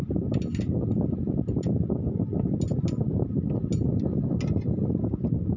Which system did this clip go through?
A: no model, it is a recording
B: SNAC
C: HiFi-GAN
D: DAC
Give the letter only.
A